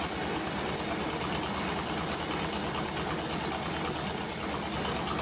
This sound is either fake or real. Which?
real